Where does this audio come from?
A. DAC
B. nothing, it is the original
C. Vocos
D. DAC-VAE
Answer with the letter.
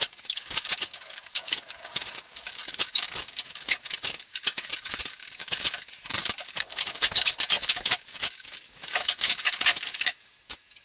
A